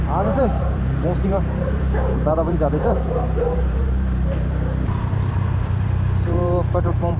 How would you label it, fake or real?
fake